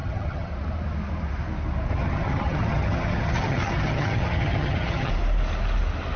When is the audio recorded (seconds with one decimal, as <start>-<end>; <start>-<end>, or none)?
0.5-1.9; 5.1-6.2